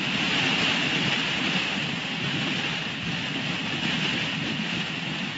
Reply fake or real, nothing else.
fake